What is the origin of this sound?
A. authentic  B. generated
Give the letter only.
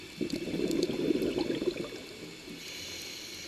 A